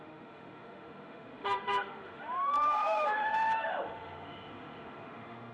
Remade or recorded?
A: remade